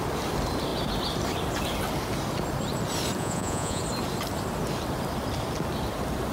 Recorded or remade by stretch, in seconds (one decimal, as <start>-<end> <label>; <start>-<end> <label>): 0.0-3.2 recorded; 3.2-3.8 remade; 3.8-6.3 recorded